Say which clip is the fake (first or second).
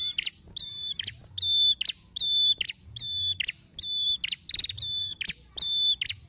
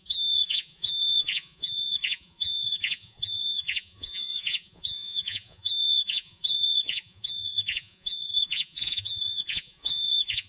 second